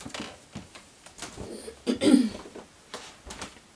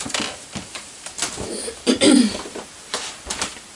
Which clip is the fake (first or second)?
second